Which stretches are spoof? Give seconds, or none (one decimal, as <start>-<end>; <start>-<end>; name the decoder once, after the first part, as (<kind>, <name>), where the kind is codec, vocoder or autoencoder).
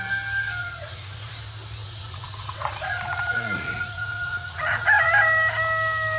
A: 0.6-1.4 (vocoder, Vocos); 1.8-5.1